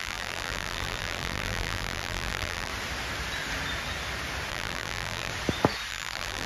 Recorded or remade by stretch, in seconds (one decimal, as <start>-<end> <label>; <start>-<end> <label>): 0.0-2.7 remade; 2.7-4.5 recorded; 4.5-5.3 remade; 5.3-5.9 recorded; 5.9-6.5 remade